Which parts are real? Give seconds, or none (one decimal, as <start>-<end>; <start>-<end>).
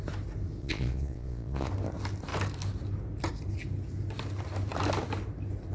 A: 0.0-0.6; 1.7-5.7